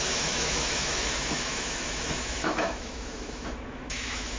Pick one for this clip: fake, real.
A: fake